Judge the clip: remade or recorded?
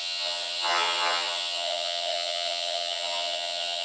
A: remade